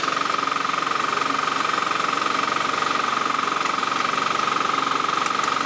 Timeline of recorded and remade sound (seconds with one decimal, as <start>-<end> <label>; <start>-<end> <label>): 0.0-5.7 recorded